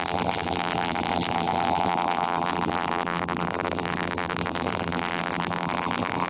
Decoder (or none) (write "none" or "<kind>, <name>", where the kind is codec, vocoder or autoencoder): vocoder, BigVGAN v2